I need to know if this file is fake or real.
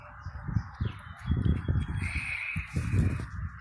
real